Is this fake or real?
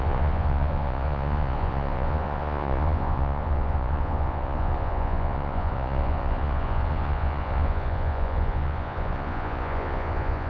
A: fake